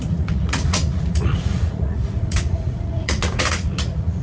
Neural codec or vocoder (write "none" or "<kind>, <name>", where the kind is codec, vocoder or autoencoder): vocoder, Vocos